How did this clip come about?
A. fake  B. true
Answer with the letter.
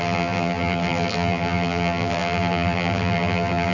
A